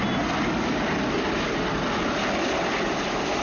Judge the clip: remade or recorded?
recorded